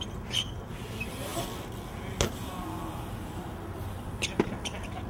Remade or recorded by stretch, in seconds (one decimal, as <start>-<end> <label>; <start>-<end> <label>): 0.0-5.1 recorded